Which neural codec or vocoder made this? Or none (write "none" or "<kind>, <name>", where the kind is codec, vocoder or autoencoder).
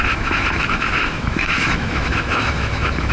autoencoder, DAC-VAE